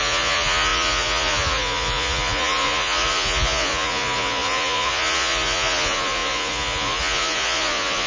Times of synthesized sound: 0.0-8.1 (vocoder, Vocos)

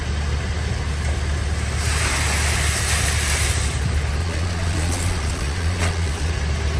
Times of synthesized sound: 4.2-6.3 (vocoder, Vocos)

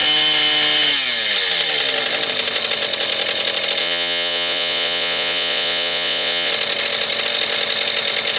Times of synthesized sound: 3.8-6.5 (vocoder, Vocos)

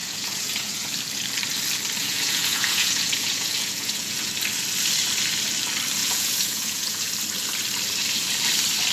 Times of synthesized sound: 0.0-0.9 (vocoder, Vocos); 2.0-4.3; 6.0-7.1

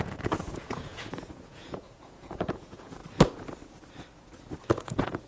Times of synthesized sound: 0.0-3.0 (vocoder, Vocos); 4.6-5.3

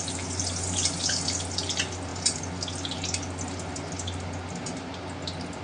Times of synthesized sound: none